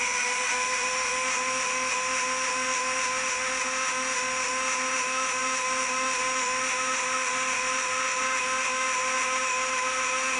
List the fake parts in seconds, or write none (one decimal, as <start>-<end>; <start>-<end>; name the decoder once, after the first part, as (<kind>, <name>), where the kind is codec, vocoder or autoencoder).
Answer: 0.0-10.4 (autoencoder, DAC-VAE)